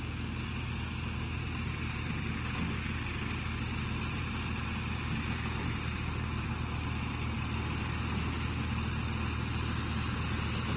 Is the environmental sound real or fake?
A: real